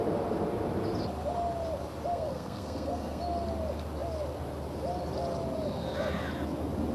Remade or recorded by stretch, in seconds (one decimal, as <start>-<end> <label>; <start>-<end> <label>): 0.0-2.1 recorded; 2.1-3.2 remade; 3.2-6.9 recorded